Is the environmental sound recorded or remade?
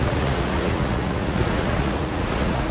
remade